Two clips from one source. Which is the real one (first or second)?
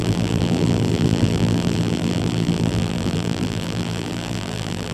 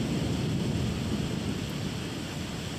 second